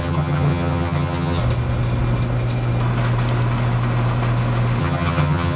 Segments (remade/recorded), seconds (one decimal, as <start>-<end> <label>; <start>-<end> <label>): 0.0-1.4 remade; 1.4-4.8 recorded; 4.8-5.6 remade